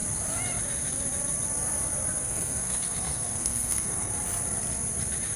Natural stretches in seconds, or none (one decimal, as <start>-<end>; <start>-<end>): 0.0-2.2; 4.1-5.4

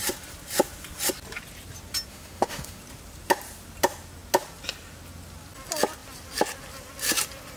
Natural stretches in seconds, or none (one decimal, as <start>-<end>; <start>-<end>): 0.0-2.1; 2.8-7.6